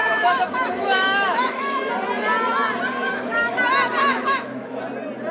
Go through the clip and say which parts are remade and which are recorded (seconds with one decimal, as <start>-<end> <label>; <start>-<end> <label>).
0.0-1.9 remade; 1.9-3.0 recorded; 3.0-3.6 remade; 3.6-4.0 recorded; 4.0-4.8 remade; 4.8-5.3 recorded